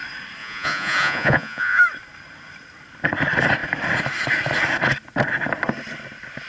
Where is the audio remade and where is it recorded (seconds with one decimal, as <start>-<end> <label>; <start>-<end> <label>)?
0.0-0.4 recorded; 0.4-1.8 remade; 1.8-6.5 recorded

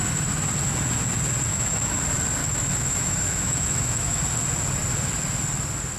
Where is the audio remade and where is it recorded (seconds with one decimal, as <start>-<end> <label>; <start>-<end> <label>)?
0.0-1.5 recorded; 1.5-2.0 remade; 2.0-2.4 recorded; 2.4-4.2 remade; 4.2-6.0 recorded

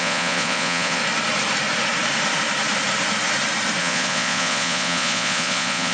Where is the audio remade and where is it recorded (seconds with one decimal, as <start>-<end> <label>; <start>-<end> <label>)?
0.0-1.0 remade; 1.0-3.8 recorded; 3.8-5.9 remade

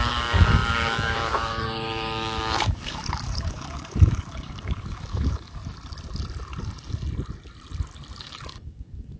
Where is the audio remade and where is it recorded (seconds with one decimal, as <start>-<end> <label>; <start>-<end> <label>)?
0.0-5.6 remade; 5.6-8.2 recorded; 8.2-9.2 remade

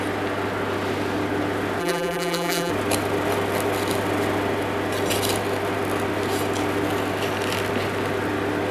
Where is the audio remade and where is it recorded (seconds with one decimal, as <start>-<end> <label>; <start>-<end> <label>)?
0.0-1.8 recorded; 1.8-2.7 remade; 2.7-8.7 recorded

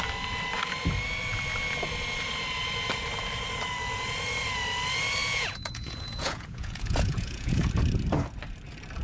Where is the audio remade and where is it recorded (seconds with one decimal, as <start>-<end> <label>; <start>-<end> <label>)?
0.0-5.2 recorded; 5.2-7.7 remade; 7.7-9.0 recorded